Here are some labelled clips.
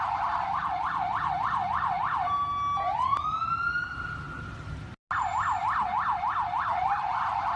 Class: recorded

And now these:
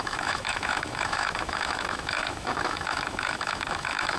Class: remade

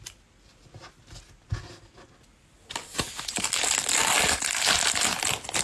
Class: recorded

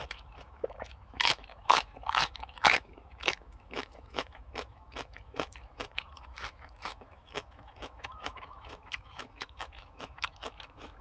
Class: remade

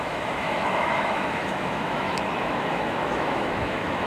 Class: remade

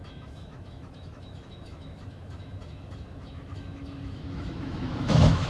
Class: remade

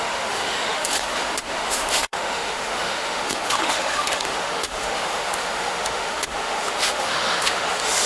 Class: remade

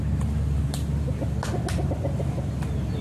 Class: recorded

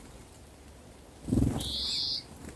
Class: recorded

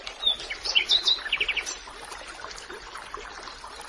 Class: recorded